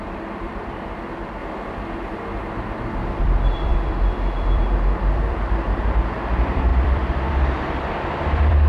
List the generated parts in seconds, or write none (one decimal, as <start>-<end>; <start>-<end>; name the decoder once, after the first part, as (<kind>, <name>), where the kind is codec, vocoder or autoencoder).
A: 0.0-1.4 (vocoder, BigVGAN v2); 3.2-8.7